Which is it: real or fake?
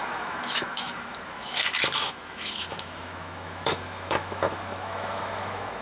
fake